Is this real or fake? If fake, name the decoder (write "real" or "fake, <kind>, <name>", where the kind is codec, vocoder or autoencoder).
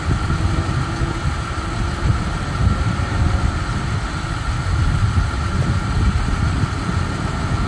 real